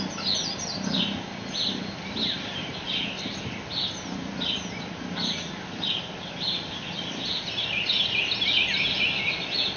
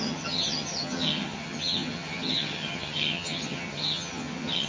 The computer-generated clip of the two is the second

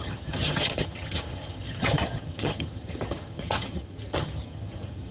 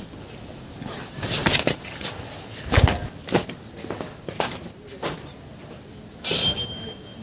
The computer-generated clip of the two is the first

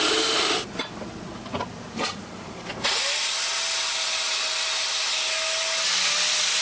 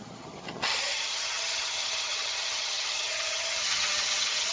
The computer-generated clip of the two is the second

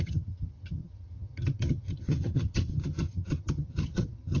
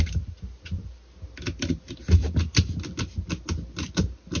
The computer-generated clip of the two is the first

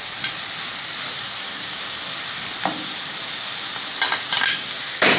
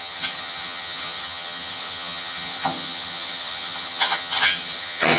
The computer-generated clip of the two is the second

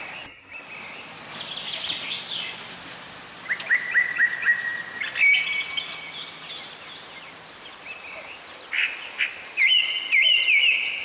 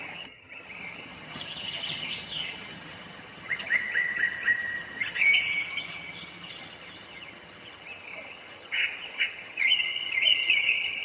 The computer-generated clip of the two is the second